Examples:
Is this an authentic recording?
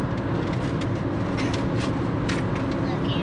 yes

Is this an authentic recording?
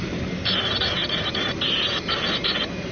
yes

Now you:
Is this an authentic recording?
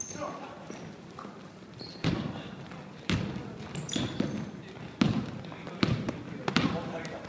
yes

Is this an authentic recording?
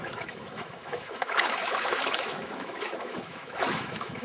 no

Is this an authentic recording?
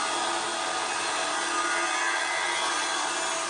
yes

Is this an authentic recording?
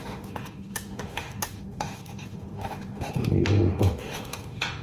no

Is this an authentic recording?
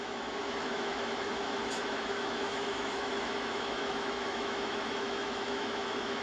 no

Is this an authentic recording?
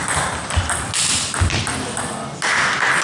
yes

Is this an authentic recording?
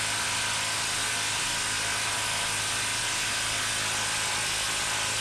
yes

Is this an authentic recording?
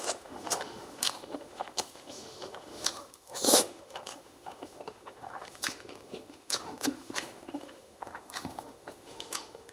no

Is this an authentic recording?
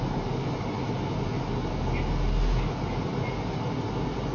yes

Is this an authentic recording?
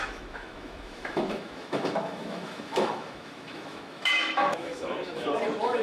no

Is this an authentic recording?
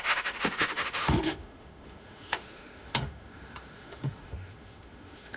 no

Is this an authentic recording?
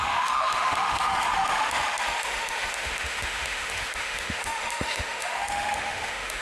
no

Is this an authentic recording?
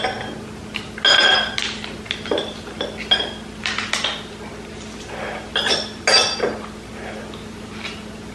yes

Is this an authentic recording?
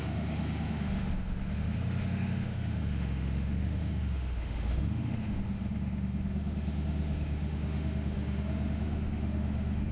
no